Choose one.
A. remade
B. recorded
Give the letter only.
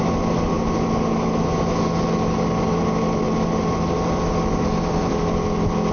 B